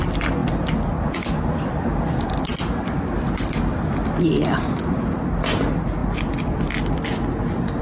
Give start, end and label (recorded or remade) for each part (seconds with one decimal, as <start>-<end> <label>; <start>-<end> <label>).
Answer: 0.0-0.4 recorded; 0.4-5.1 remade; 5.1-6.0 recorded; 6.0-6.9 remade; 6.9-7.8 recorded